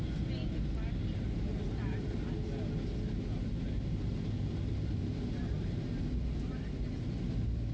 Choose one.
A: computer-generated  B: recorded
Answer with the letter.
B